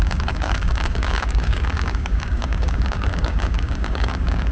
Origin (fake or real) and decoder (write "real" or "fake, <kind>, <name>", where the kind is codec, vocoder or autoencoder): fake, codec, DAC